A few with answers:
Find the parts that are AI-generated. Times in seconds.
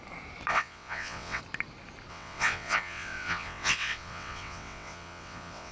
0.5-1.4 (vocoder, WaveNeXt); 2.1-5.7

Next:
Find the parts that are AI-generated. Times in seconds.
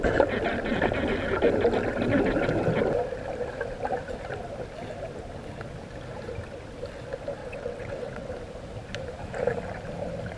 7.4-8.3 (vocoder, WaveNeXt)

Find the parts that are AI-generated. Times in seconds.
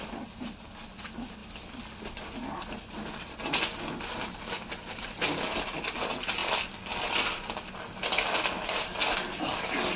none